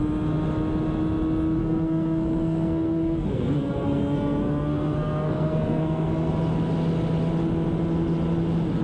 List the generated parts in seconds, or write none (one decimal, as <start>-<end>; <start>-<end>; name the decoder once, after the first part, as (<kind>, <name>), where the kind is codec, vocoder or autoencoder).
1.6-6.3 (codec, SNAC)